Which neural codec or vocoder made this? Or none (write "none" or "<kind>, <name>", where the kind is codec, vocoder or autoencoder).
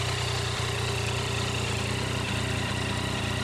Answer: none